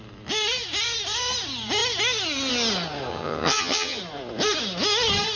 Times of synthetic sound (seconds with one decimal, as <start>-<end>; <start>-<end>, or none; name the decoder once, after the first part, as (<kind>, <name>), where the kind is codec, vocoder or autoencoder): 3.1-4.0 (vocoder, HiFi-GAN)